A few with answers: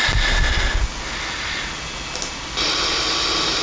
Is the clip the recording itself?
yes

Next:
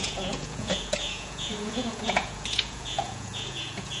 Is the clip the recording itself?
no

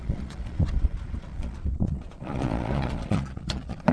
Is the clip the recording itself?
no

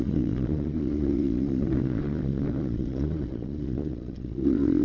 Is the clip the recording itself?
no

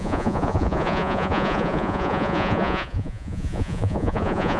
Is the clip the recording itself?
no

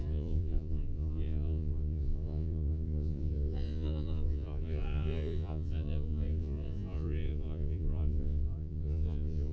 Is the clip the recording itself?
no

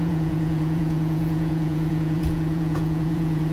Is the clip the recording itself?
no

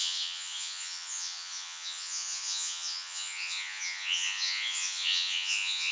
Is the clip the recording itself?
no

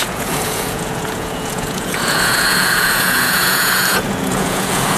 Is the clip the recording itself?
no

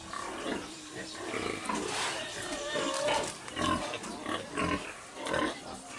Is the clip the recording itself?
yes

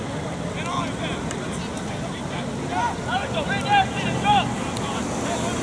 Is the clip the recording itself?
yes